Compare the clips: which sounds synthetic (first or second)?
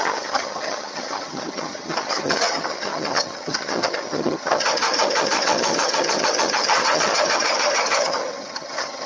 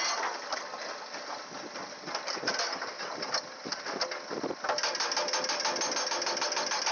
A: first